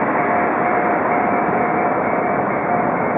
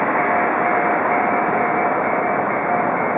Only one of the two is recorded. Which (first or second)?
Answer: second